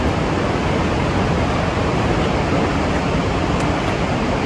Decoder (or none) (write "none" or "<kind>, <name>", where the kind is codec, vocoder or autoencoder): none